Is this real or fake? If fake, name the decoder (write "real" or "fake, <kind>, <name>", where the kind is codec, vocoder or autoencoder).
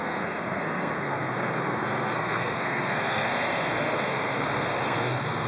fake, codec, SNAC